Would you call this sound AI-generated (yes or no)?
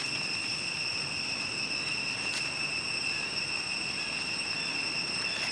yes